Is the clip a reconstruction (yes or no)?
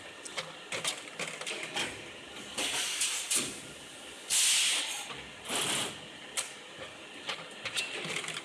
no